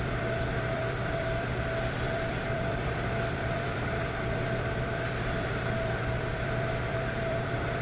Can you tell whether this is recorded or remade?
remade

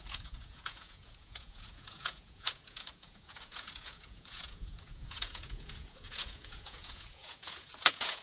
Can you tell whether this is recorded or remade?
remade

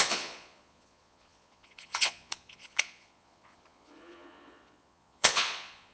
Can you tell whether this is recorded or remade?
remade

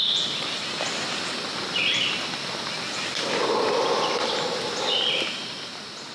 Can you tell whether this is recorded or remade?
recorded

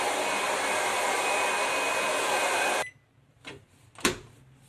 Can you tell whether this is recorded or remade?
recorded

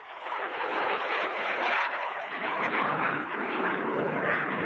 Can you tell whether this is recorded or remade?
remade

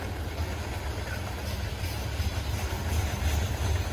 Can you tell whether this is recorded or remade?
recorded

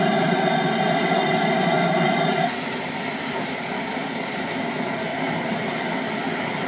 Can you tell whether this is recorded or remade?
remade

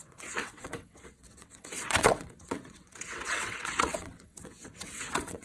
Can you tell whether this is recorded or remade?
remade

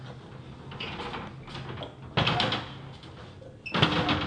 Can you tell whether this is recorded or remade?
recorded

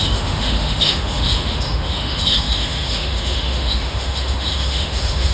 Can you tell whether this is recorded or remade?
remade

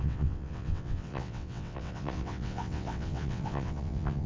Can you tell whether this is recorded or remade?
remade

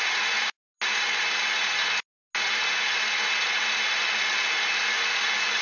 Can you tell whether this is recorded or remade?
recorded